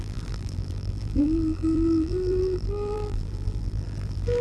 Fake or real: fake